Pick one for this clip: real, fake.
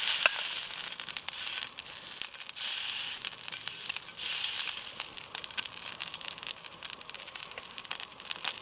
real